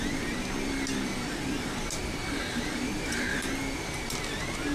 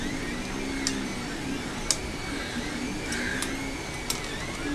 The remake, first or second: first